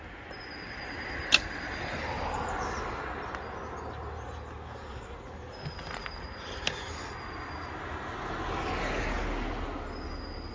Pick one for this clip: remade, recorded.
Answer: recorded